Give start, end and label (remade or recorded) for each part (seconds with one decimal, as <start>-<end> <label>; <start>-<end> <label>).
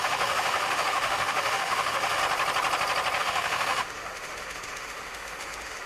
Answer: 0.0-2.2 remade; 2.2-3.2 recorded; 3.2-5.9 remade